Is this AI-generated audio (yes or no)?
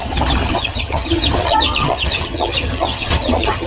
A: yes